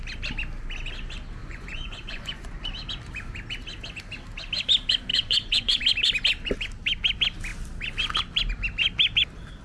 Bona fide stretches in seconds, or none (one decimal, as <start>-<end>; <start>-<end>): 0.0-1.4; 2.7-5.1; 5.8-9.6